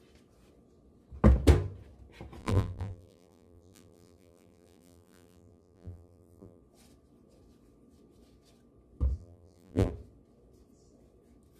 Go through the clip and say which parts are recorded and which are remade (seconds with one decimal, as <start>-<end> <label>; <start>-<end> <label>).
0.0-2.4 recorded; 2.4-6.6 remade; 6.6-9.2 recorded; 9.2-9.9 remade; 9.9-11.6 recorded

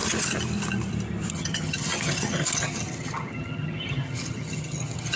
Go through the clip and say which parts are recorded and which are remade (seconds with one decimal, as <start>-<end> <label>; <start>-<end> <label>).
0.0-1.3 recorded; 1.3-5.2 remade

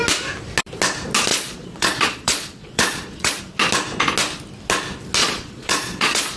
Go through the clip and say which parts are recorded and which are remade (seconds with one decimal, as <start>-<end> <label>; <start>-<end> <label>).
0.0-1.3 recorded; 1.3-3.4 remade; 3.4-5.2 recorded; 5.2-6.4 remade